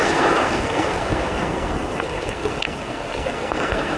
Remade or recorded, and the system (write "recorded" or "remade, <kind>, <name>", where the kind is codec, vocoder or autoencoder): remade, codec, SNAC